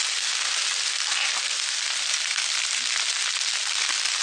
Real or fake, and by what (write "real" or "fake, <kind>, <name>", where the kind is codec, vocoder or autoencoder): real